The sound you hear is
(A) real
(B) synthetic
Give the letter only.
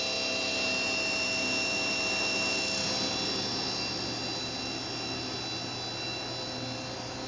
A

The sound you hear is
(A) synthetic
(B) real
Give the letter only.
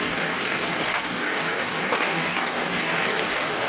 A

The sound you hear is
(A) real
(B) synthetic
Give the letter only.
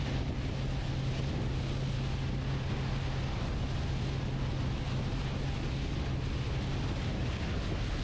A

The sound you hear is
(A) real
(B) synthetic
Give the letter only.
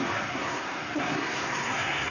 B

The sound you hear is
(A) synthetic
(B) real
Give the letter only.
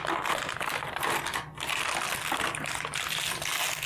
B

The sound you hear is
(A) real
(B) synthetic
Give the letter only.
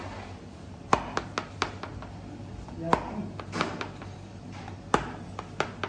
A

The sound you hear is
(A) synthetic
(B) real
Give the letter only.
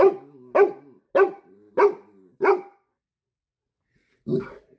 B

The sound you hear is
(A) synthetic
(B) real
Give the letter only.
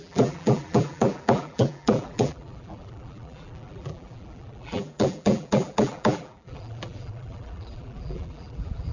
A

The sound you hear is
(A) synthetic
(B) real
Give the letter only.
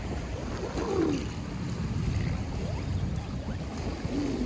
B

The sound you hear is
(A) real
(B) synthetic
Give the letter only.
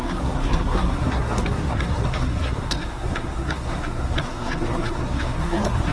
B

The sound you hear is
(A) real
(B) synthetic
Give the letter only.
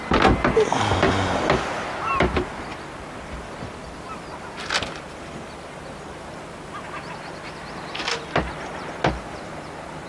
A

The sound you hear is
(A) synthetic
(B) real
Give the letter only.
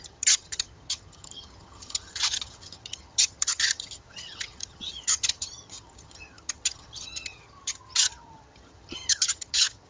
A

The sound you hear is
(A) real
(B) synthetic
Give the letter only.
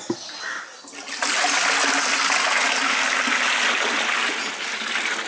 A